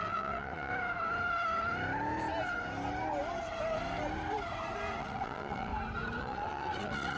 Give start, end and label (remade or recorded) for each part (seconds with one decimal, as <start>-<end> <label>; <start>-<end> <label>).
0.0-0.7 remade; 0.7-5.0 recorded; 5.0-5.7 remade; 5.7-6.2 recorded; 6.2-7.2 remade